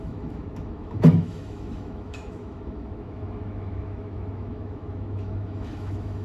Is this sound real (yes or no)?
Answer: no